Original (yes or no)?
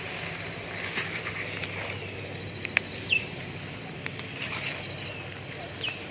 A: yes